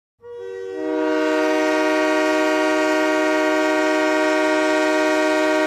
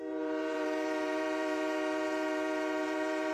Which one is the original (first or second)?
first